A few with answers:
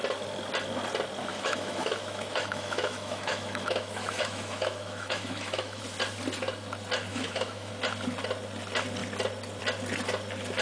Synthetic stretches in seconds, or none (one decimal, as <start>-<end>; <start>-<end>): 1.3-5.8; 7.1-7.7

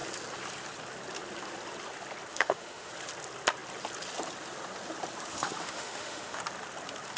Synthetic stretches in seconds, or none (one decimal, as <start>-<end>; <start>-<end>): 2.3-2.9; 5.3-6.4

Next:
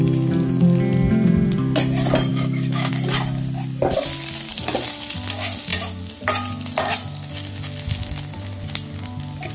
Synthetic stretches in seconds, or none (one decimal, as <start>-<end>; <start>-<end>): 2.3-2.9

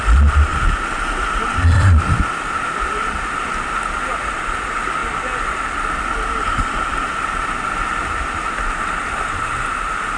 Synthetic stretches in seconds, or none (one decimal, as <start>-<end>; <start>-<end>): none